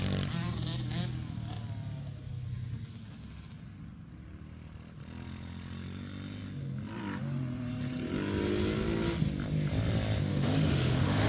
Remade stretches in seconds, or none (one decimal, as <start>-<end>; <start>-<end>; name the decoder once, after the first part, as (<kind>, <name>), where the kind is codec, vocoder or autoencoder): 10.3-11.3 (autoencoder, DAC-VAE)